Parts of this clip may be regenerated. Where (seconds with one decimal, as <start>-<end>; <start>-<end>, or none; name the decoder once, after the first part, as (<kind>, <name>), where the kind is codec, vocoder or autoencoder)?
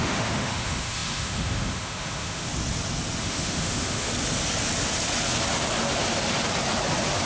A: 0.0-2.5 (autoencoder, DAC-VAE); 3.2-4.1